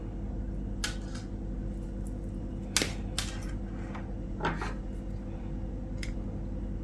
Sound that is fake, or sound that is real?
real